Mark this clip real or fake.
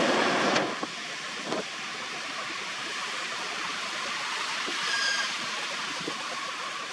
real